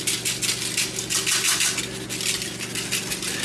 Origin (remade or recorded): recorded